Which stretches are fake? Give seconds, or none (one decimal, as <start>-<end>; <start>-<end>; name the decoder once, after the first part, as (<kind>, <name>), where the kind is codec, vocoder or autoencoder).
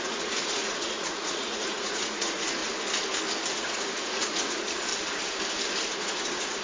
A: 0.0-2.6 (vocoder, Vocos); 3.5-4.9; 6.0-6.6